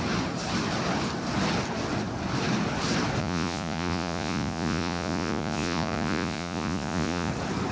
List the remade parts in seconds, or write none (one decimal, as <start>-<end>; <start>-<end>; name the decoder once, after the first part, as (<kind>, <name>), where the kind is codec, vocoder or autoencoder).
3.2-7.3 (vocoder, Vocos)